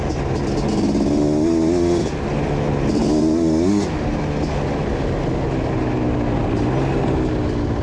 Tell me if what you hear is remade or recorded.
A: recorded